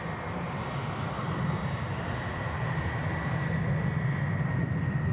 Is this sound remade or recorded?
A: recorded